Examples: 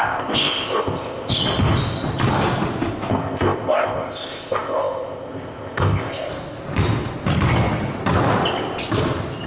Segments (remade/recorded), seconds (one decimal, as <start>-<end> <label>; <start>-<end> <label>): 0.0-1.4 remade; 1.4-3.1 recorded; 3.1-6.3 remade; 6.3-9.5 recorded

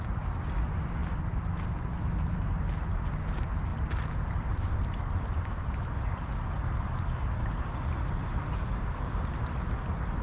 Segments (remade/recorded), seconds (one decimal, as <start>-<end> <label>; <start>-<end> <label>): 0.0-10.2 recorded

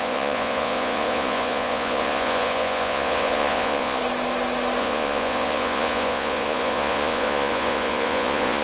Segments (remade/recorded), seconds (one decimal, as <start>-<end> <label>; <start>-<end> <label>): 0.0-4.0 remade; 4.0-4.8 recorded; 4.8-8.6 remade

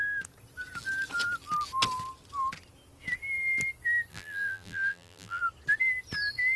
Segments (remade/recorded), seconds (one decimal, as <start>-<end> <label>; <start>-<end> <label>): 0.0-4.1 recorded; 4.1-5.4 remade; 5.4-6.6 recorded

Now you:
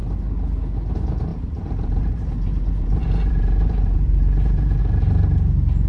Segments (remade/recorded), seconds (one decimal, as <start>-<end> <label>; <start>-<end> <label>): 0.0-1.3 recorded; 1.3-4.8 remade; 4.8-5.9 recorded